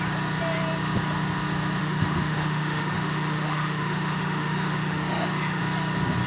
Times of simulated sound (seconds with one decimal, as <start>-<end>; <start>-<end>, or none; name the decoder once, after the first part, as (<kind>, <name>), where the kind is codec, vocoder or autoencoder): 1.8-5.6 (autoencoder, DAC-VAE)